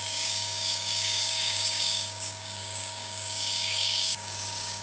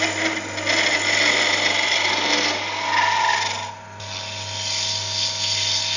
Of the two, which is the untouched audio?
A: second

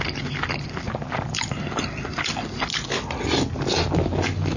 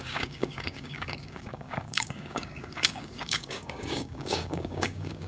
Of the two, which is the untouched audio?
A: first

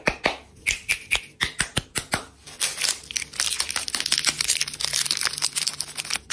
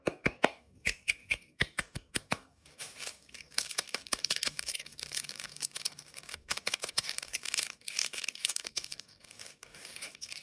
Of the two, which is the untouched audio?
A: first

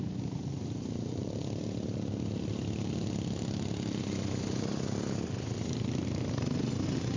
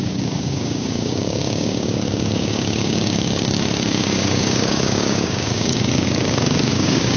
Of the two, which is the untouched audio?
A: first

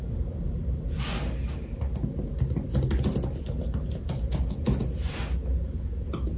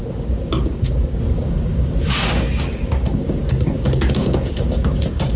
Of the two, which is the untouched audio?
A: first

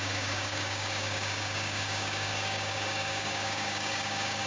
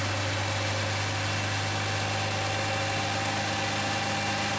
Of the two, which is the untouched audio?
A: second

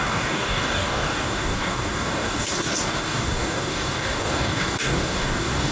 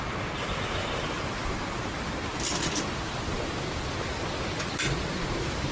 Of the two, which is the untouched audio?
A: second